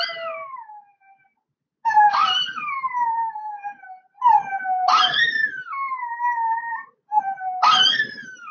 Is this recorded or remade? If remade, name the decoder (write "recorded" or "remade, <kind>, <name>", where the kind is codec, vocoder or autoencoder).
recorded